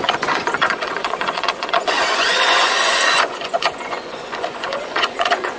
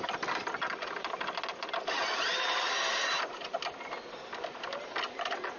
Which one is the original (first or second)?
second